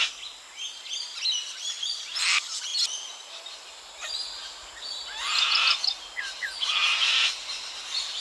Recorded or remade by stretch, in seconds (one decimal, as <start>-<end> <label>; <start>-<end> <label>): 0.0-8.2 recorded

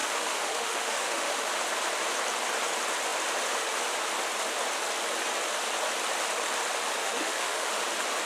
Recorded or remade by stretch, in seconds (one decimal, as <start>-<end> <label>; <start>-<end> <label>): 0.0-1.5 remade; 1.5-7.0 recorded; 7.0-7.7 remade; 7.7-8.3 recorded

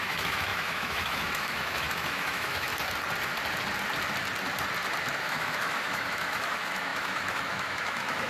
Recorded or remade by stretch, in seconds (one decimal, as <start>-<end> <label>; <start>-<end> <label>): 0.0-2.7 remade; 2.7-5.2 recorded; 5.2-8.3 remade

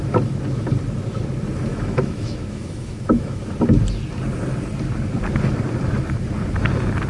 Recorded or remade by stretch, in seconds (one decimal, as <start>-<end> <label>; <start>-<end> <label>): 0.0-1.7 recorded; 1.7-3.4 remade; 3.4-7.1 recorded

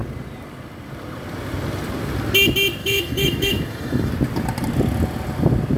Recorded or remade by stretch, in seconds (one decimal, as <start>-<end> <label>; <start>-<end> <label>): 0.0-2.8 recorded; 2.8-4.1 remade; 4.1-5.8 recorded

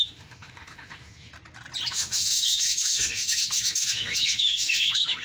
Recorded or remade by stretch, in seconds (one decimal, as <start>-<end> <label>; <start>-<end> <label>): 0.0-1.3 remade; 1.3-1.9 recorded; 1.9-5.2 remade